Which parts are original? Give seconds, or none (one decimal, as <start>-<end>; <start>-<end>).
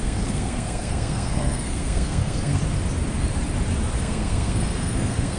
2.6-4.0